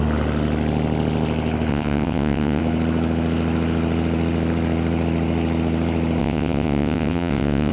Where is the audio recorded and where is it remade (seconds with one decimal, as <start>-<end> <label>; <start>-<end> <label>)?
0.0-1.7 recorded; 1.7-2.6 remade; 2.6-6.2 recorded; 6.2-7.7 remade

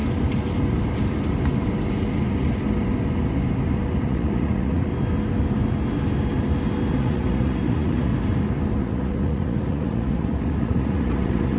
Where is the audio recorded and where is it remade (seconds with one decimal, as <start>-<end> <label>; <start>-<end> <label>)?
0.0-4.0 recorded; 4.0-4.9 remade; 4.9-6.9 recorded; 6.9-8.1 remade; 8.1-8.8 recorded; 8.8-11.6 remade